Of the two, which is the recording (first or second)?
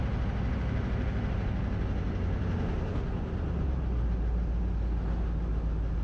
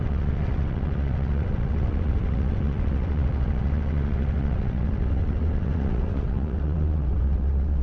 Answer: first